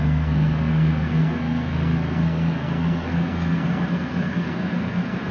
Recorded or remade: remade